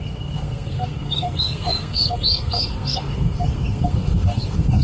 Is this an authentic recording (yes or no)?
no